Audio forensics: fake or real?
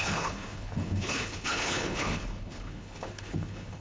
fake